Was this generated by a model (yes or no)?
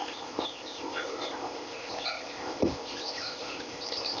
yes